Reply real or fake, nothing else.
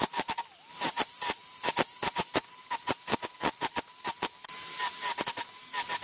real